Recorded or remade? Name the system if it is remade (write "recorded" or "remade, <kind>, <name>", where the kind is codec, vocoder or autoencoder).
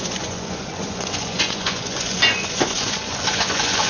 remade, vocoder, Vocos